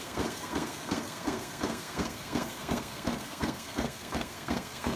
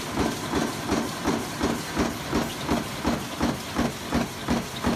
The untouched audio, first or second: second